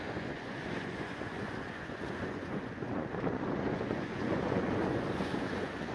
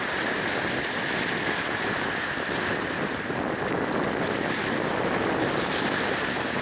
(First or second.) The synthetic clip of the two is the first